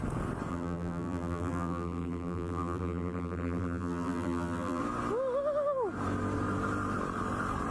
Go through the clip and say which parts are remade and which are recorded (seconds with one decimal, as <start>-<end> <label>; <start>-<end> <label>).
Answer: 0.0-0.5 recorded; 0.5-4.8 remade; 4.8-7.7 recorded